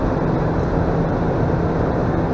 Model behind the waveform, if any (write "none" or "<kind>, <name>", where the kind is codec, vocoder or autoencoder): none